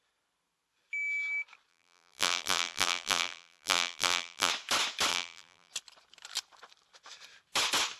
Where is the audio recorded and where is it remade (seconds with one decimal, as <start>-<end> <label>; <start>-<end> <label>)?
0.0-1.7 recorded; 1.7-4.5 remade; 4.5-5.1 recorded; 5.1-5.7 remade; 5.7-8.0 recorded